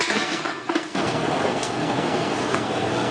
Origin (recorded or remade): remade